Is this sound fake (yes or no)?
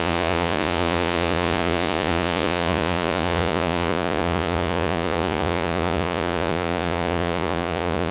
yes